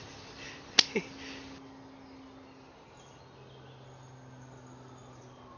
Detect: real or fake real